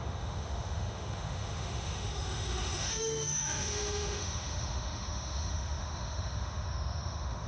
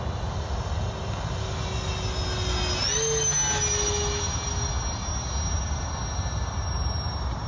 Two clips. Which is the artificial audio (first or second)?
first